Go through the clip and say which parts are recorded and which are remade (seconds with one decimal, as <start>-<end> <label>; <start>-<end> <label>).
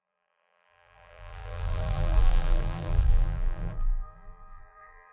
0.0-5.1 remade